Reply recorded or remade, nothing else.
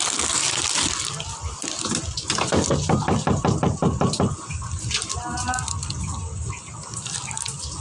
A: recorded